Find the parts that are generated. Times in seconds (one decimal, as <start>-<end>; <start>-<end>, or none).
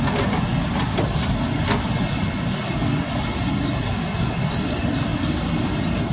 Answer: none